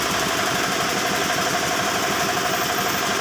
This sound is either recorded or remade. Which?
recorded